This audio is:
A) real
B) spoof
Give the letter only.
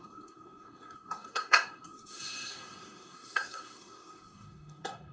B